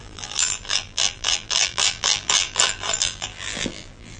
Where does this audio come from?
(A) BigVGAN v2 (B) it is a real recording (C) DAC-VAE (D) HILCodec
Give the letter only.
A